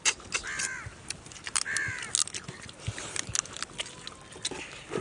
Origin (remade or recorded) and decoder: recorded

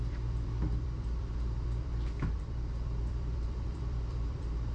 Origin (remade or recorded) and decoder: remade, vocoder, BigVGAN v2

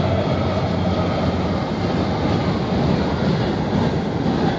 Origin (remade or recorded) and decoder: recorded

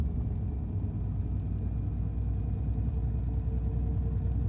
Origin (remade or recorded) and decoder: recorded